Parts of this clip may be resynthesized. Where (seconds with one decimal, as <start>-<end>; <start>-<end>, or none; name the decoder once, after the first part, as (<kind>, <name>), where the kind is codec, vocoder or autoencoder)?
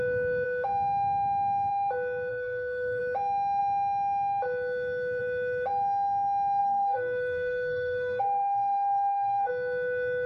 2.3-3.0 (codec, SNAC); 6.6-9.5